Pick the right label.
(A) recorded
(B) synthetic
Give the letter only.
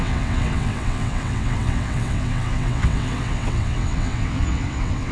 B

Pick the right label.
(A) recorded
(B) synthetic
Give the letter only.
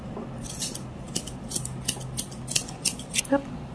A